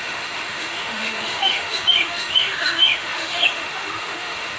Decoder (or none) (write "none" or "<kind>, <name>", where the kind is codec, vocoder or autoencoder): autoencoder, DAC-VAE